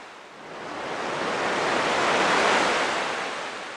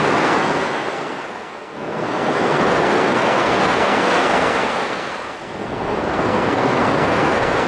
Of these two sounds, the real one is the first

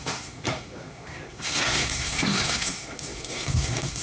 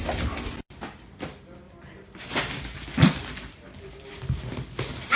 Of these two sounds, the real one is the second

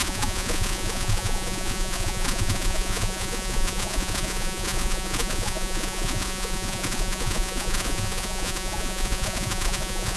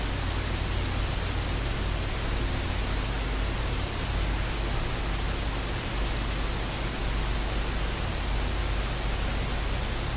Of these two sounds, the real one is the second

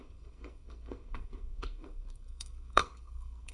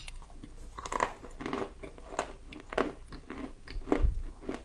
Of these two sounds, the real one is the second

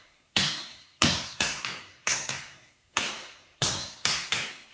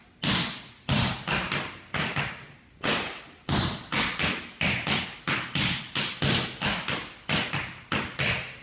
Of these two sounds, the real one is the second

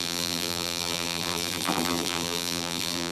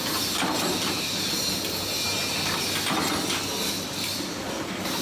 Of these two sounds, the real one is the second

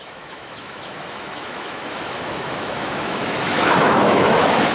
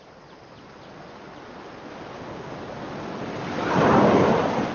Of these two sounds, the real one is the second